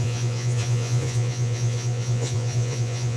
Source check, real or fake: fake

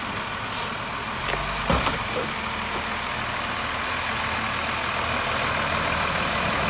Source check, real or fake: real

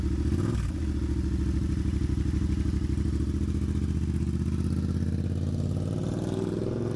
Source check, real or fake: real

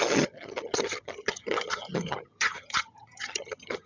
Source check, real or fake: fake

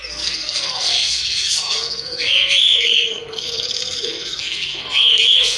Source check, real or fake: fake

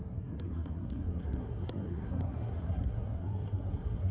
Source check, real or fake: fake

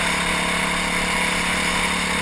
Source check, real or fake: real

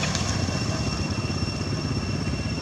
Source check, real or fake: real